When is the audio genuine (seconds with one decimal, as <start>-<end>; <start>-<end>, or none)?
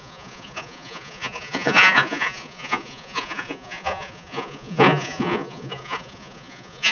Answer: none